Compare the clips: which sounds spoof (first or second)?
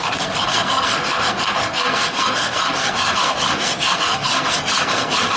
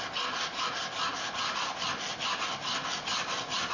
first